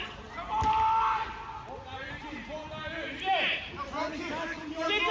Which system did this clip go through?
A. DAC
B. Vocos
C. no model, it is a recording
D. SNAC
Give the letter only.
C